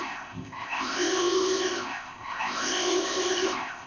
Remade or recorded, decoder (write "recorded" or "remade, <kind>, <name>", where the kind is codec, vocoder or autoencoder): remade, codec, ZipCodec